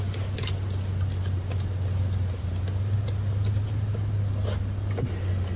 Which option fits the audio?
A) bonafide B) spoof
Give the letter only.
A